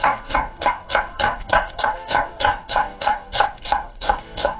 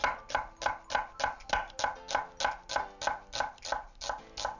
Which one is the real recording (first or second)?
second